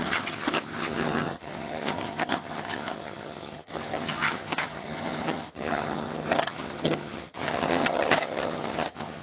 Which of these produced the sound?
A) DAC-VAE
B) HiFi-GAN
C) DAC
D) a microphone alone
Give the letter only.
B